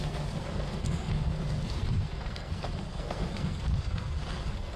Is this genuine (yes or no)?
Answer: no